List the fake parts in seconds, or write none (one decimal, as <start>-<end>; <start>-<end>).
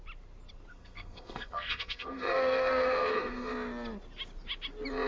0.7-3.5